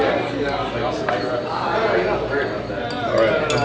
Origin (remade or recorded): recorded